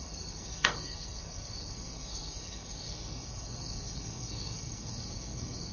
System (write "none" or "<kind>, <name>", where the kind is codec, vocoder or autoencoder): codec, SNAC